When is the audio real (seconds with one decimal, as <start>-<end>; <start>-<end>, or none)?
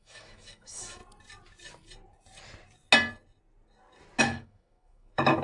1.0-4.2